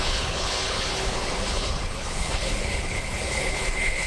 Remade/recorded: remade